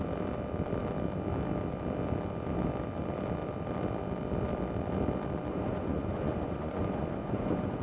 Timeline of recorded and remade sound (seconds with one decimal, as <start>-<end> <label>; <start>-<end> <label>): 0.0-5.5 recorded; 5.5-7.8 remade